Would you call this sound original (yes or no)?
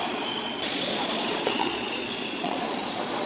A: no